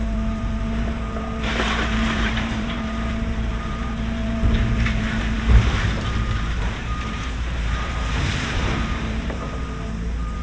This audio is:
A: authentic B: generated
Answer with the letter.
B